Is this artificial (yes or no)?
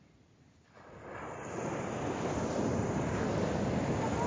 no